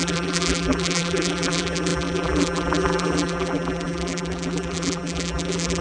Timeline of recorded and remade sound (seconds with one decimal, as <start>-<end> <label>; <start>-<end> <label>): 0.0-5.8 remade